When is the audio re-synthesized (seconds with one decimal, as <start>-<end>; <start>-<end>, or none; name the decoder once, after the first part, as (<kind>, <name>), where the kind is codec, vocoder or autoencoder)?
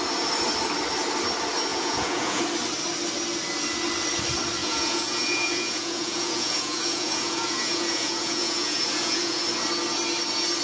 1.7-2.4 (vocoder, Vocos); 4.6-9.4